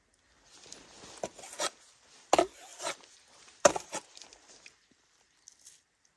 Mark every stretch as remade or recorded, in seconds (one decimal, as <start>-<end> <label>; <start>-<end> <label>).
0.0-2.7 recorded; 2.7-3.7 remade; 3.7-6.2 recorded